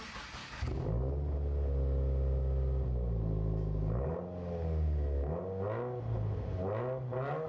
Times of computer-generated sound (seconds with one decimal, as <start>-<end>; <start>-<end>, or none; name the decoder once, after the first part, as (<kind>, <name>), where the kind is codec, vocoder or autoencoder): 0.4-1.1 (codec, DAC)